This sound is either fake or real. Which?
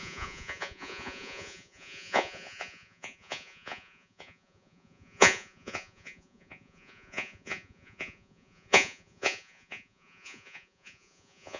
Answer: fake